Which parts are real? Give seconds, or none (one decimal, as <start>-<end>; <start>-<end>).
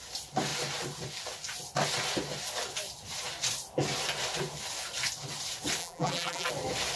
0.0-5.8; 6.5-7.0